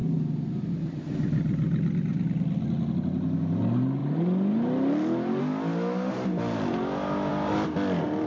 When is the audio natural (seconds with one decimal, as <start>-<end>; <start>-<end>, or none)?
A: 0.0-8.3